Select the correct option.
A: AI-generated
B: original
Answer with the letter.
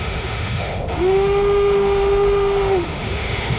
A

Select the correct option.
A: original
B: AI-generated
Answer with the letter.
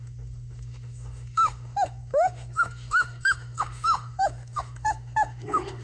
B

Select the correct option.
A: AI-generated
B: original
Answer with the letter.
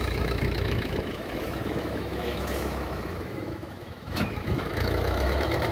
A